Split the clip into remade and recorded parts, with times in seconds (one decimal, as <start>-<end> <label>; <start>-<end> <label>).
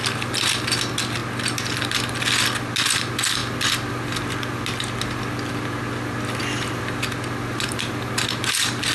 0.0-8.9 recorded